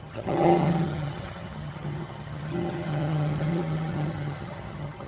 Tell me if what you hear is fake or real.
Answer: fake